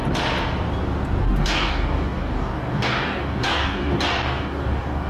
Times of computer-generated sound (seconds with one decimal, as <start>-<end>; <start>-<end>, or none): 1.2-5.1